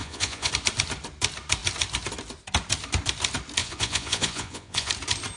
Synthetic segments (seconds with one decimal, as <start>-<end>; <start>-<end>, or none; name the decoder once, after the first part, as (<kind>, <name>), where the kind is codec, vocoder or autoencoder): 0.0-0.5 (vocoder, Vocos); 3.6-4.9